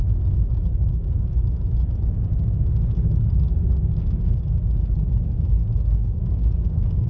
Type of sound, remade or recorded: remade